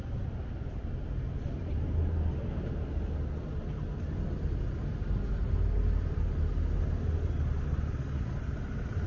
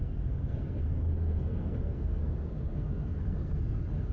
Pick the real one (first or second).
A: first